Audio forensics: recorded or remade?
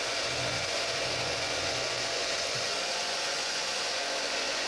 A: remade